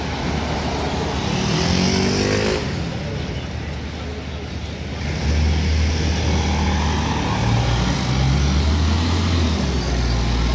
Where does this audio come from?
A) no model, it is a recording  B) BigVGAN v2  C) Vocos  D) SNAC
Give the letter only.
A